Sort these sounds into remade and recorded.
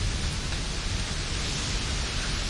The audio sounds recorded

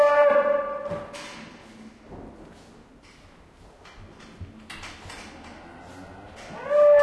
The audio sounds recorded